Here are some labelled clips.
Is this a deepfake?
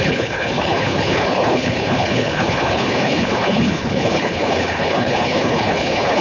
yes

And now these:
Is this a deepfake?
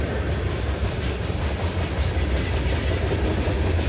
no